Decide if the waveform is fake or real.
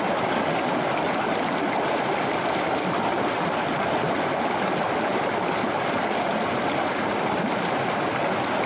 real